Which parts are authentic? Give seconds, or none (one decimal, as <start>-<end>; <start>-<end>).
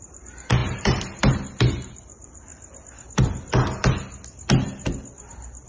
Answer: 2.5-5.3